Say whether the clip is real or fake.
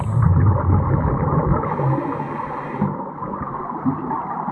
real